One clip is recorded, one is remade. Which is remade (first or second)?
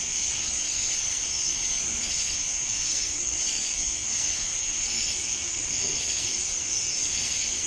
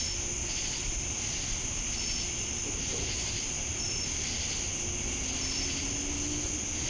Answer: first